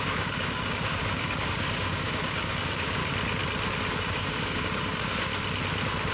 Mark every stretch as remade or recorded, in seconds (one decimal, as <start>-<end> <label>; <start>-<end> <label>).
0.0-3.0 remade; 3.0-3.9 recorded; 3.9-5.3 remade; 5.3-6.1 recorded